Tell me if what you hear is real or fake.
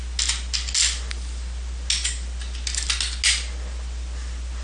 real